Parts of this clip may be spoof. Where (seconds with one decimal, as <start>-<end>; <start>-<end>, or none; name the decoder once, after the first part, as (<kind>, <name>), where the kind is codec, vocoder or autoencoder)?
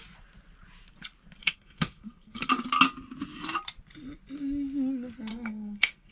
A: 1.4-2.5 (codec, SNAC); 5.3-6.1